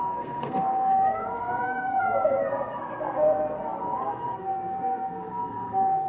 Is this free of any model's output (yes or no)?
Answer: no